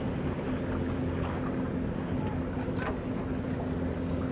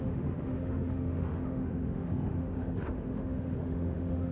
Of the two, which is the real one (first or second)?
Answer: first